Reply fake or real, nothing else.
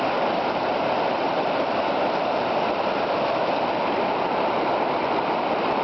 fake